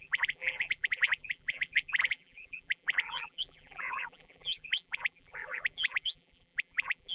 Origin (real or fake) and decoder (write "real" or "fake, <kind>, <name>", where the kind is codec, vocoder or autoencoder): fake, vocoder, BigVGAN v2